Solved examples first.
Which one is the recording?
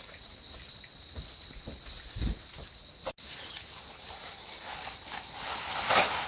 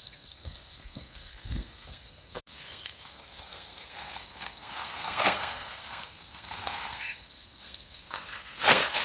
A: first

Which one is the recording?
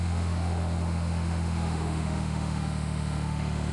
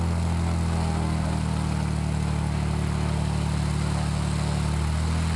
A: second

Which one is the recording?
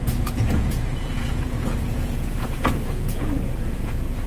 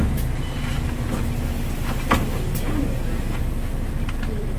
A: second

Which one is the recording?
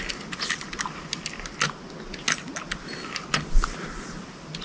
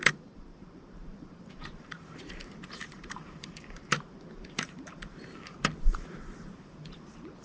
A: first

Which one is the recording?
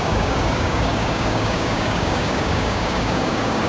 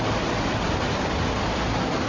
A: second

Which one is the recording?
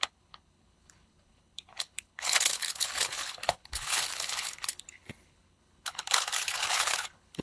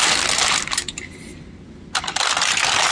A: second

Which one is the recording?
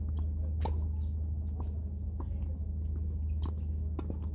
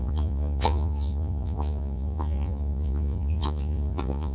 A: first